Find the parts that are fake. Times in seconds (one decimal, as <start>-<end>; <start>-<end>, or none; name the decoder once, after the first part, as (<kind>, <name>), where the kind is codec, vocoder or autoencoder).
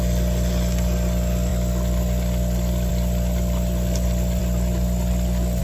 none